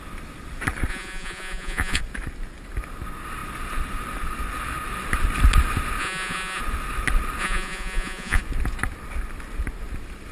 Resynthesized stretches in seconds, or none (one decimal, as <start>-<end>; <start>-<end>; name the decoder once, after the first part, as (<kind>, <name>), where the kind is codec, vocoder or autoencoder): 0.9-2.0 (vocoder, Vocos); 6.0-6.6; 7.4-8.4